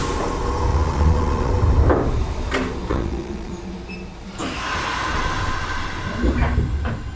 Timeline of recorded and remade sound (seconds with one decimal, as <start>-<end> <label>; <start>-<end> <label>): 0.0-0.7 recorded; 0.7-1.5 remade; 1.5-2.9 recorded; 2.9-3.5 remade; 3.5-7.2 recorded